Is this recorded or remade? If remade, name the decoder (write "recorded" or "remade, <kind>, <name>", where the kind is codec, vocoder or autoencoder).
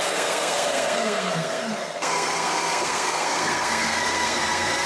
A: remade, codec, SNAC